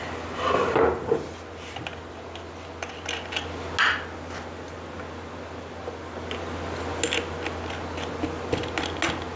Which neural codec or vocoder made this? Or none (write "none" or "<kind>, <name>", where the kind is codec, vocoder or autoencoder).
none